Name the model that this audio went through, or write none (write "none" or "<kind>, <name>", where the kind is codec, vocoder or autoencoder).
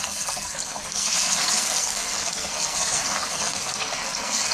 codec, SNAC